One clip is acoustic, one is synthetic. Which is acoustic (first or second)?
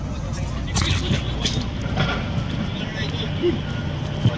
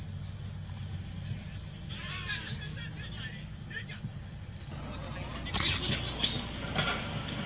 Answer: second